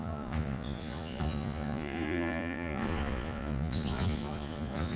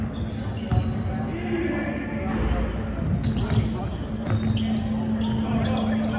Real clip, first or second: second